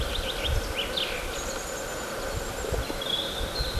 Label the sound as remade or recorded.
recorded